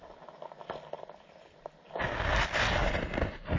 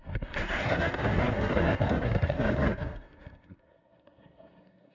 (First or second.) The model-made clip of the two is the second